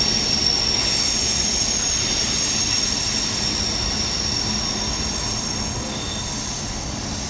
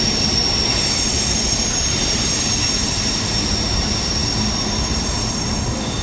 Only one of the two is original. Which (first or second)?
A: first